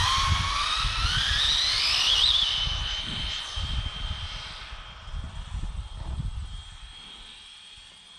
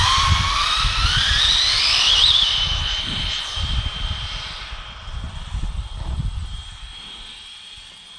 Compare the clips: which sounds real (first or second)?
first